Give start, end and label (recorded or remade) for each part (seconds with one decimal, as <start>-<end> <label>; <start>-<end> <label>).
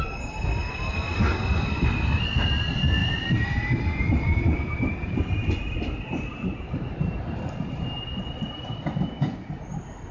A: 0.0-3.0 recorded; 3.0-7.0 remade; 7.0-10.1 recorded